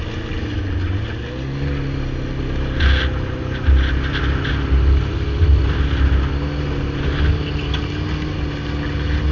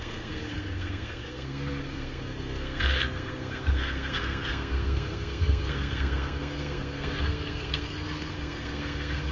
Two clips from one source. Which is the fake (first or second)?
second